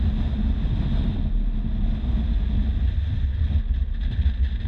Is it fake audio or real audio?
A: real